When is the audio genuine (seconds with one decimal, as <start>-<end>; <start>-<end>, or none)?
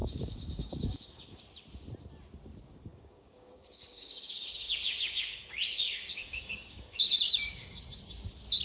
1.4-2.9; 7.8-8.6